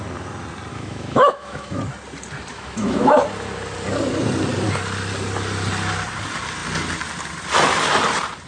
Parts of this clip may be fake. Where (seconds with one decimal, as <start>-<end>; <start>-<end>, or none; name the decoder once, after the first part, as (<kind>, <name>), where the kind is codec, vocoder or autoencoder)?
0.7-1.8 (autoencoder, DAC-VAE); 2.5-3.2